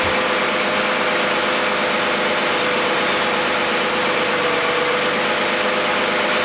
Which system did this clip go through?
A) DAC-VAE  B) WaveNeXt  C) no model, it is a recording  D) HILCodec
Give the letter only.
C